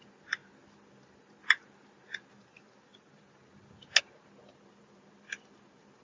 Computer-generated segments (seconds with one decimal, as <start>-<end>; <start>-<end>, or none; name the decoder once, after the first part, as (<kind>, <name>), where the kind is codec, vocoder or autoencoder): none